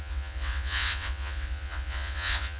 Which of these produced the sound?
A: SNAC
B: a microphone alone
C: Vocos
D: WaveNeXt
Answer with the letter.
D